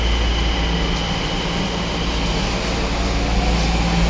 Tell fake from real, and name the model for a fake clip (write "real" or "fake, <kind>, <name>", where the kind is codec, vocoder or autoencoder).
real